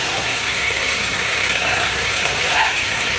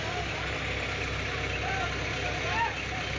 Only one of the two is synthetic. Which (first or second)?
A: first